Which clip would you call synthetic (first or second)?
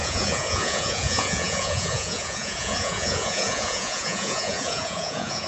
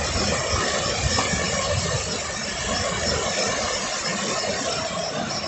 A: first